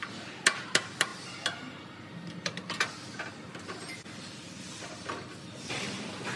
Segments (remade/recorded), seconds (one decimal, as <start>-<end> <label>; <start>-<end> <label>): 0.0-6.4 recorded